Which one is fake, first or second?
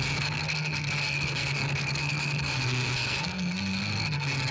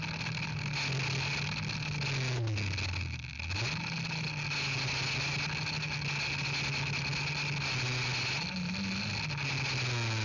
first